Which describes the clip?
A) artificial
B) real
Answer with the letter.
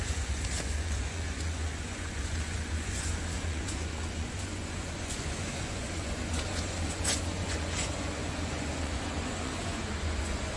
A